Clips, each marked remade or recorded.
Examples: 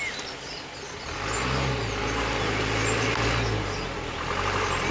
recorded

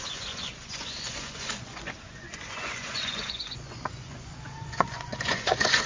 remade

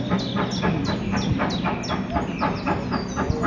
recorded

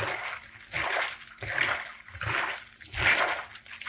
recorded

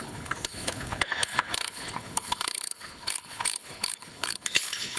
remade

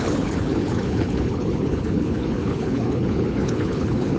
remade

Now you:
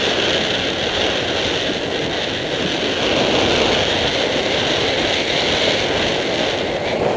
recorded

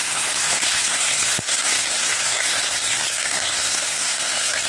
remade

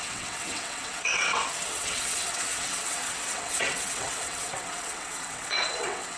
remade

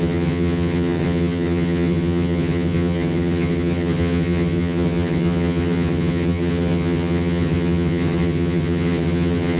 remade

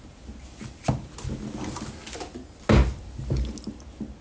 recorded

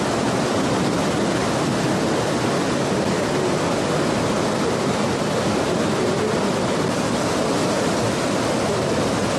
recorded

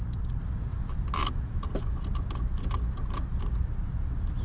recorded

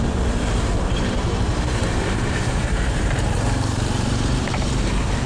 remade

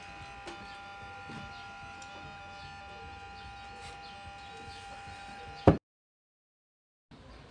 recorded